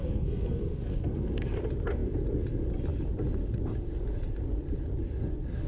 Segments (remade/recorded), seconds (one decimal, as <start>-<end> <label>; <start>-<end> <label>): 0.0-1.5 remade; 1.5-5.7 recorded

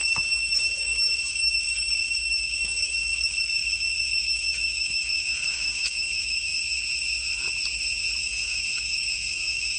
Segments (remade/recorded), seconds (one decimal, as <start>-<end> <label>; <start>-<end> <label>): 0.0-6.5 remade; 6.5-8.2 recorded; 8.2-9.8 remade

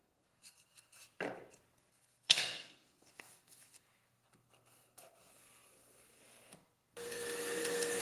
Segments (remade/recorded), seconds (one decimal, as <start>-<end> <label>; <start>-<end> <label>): 0.0-1.0 remade; 1.0-1.9 recorded; 1.9-8.0 remade

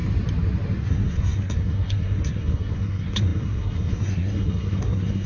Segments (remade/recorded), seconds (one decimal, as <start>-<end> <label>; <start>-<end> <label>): 0.0-0.8 recorded; 0.8-5.3 remade

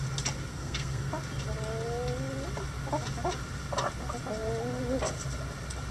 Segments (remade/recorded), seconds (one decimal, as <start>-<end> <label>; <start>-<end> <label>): 0.0-0.5 recorded; 0.5-1.1 remade; 1.1-5.9 recorded